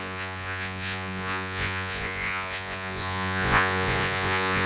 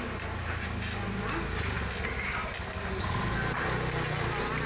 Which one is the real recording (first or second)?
second